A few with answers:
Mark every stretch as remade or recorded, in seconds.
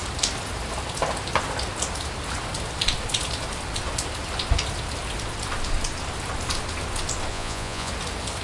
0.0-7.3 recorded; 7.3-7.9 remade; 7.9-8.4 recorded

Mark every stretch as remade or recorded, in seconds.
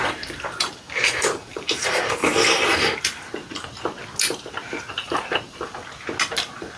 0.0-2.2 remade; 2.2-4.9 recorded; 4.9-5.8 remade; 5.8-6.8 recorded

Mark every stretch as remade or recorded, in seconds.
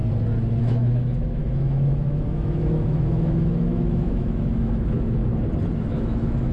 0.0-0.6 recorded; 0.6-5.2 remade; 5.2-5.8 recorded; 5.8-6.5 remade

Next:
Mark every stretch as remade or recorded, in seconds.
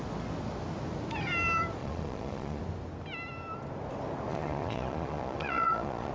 0.0-1.8 recorded; 1.8-2.6 remade; 2.6-4.3 recorded; 4.3-6.1 remade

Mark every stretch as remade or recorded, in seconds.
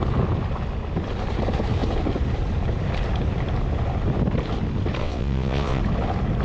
0.0-5.0 recorded; 5.0-5.8 remade; 5.8-6.4 recorded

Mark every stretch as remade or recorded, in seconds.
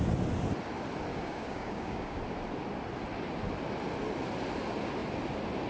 0.0-1.1 recorded; 1.1-2.2 remade; 2.2-5.7 recorded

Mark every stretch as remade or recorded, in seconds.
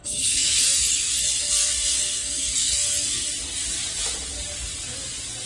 0.0-3.3 remade; 3.3-5.5 recorded